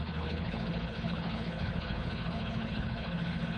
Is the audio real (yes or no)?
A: no